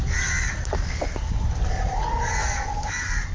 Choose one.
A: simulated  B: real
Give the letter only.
B